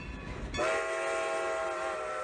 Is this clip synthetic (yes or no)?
no